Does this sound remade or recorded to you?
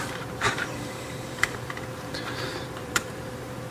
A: remade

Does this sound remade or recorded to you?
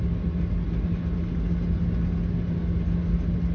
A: recorded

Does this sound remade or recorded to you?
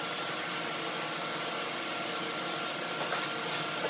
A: recorded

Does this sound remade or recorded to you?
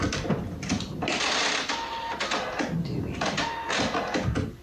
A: recorded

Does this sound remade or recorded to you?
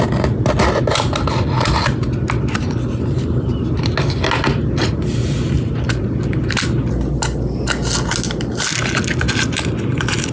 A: recorded